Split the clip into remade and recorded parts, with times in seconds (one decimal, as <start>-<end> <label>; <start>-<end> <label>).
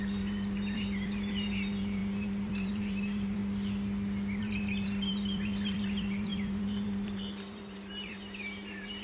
0.0-3.4 remade; 3.4-4.4 recorded; 4.4-9.0 remade